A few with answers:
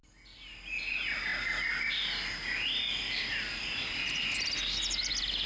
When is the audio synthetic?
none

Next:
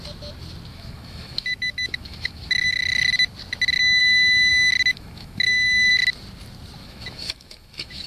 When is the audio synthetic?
0.7-2.8 (autoencoder, DAC-VAE); 4.0-4.5; 4.9-5.9; 6.8-8.1

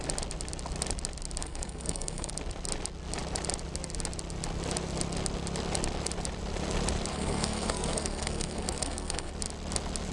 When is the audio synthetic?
1.4-2.3 (codec, SNAC); 7.1-9.3